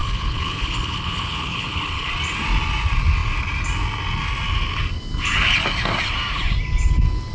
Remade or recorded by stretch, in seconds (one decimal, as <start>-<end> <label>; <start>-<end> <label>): 0.0-2.1 remade; 2.1-7.3 recorded